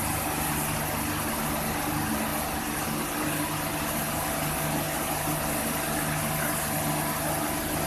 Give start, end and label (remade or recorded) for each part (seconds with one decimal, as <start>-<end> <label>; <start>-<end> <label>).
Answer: 0.0-7.9 recorded